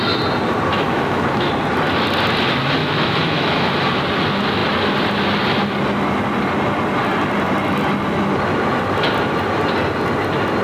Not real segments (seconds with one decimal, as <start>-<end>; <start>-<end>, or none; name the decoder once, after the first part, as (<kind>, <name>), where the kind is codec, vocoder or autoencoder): 0.7-1.5 (autoencoder, DAC-VAE); 2.8-3.7

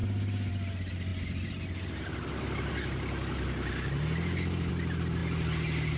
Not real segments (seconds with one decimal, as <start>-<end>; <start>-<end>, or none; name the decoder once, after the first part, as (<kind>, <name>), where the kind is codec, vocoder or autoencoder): none